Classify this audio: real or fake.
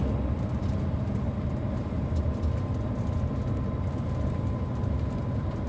real